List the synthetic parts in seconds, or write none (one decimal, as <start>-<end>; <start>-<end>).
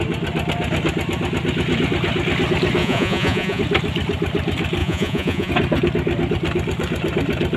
2.8-3.6; 4.8-5.5